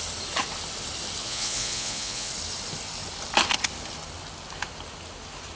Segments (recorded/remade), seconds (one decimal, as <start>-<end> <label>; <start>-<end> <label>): 0.0-1.2 recorded; 1.2-2.3 remade; 2.3-5.6 recorded